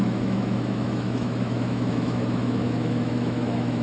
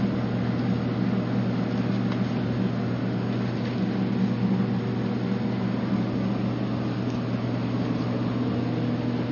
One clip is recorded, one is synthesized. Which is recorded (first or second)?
second